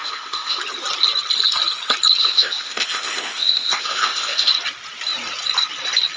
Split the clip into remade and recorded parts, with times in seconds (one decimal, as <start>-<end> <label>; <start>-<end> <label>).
0.0-0.6 remade; 0.6-2.2 recorded; 2.2-4.5 remade; 4.5-6.2 recorded